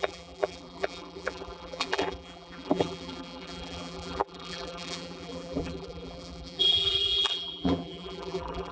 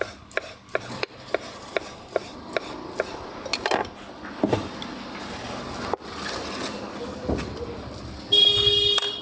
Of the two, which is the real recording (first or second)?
second